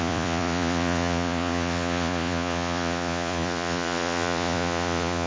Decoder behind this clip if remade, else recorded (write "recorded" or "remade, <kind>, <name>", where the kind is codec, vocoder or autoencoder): remade, vocoder, Vocos